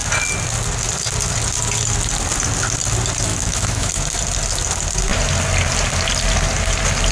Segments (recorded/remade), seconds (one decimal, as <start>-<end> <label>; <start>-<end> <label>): 0.0-3.3 recorded; 3.3-3.9 remade; 3.9-7.1 recorded